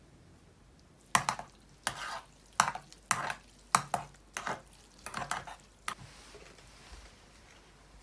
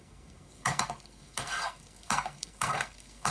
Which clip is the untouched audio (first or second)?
first